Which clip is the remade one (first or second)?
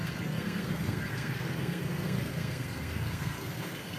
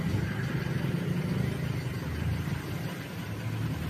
first